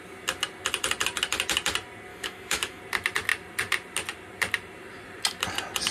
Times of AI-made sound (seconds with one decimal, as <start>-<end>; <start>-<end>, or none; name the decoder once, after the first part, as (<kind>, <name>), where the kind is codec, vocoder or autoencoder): 2.1-2.8 (autoencoder, DAC-VAE)